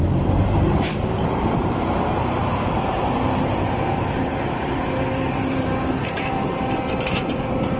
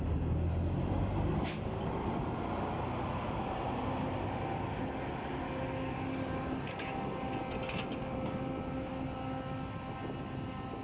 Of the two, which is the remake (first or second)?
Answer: first